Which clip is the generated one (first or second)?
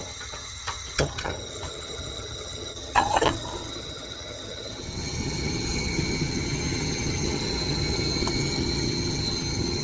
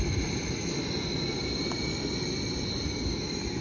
first